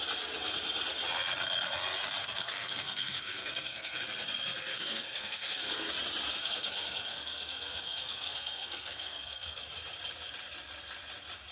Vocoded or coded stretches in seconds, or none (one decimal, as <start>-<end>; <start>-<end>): 2.2-4.0; 4.7-5.9; 6.4-9.6